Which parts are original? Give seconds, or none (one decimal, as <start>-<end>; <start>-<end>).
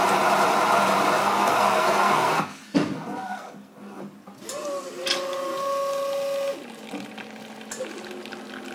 0.0-1.2; 4.0-8.7